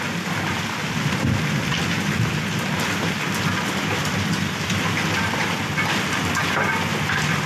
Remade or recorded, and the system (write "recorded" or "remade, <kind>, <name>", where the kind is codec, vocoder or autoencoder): recorded